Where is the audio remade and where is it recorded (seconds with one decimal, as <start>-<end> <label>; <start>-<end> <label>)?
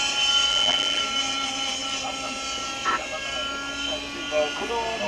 0.0-0.5 recorded; 0.5-1.0 remade; 1.0-5.1 recorded